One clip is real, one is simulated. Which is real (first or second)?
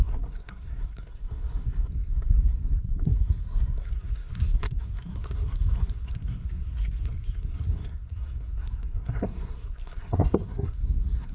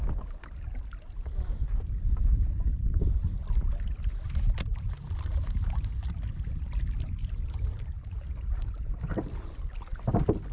second